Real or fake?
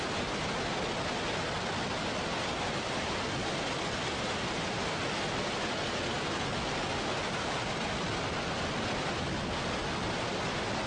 real